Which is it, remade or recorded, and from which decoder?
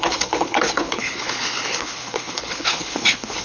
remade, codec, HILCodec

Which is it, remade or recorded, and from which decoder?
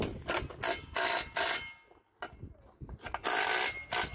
recorded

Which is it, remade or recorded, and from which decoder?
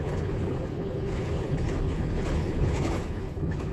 remade, codec, HILCodec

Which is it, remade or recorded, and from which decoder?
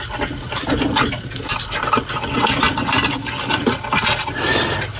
recorded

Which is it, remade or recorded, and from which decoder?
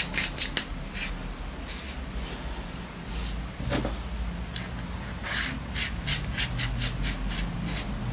recorded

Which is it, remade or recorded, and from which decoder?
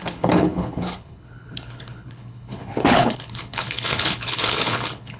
remade, codec, HILCodec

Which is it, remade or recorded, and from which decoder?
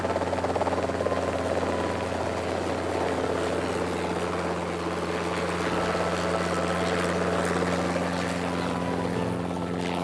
recorded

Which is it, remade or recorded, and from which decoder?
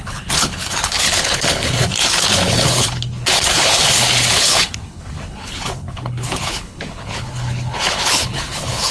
remade, codec, HILCodec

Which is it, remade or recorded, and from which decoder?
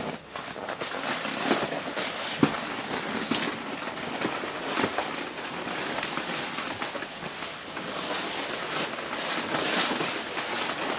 recorded